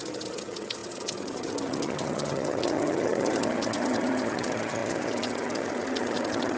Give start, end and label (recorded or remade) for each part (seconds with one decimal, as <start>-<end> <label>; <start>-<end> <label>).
0.0-6.6 remade